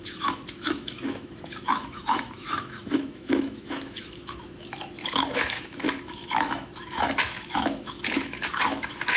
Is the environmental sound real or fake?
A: fake